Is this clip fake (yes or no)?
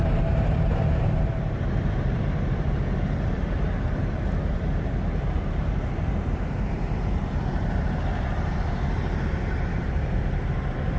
yes